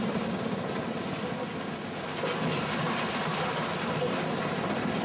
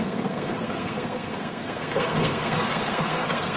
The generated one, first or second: second